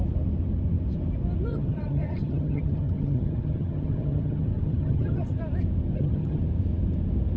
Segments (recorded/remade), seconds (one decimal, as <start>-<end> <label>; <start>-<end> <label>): 0.0-1.5 recorded; 1.5-5.4 remade; 5.4-5.9 recorded; 5.9-6.4 remade; 6.4-7.4 recorded